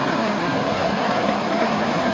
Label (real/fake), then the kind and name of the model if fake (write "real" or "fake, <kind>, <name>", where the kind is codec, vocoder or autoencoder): fake, codec, SNAC